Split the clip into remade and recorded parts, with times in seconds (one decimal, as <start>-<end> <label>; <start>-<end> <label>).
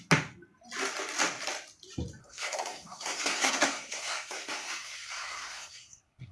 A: 0.0-2.2 recorded; 2.2-6.3 remade